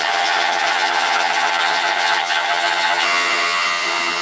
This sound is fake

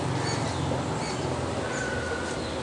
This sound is real